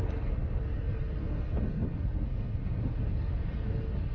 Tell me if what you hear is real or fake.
fake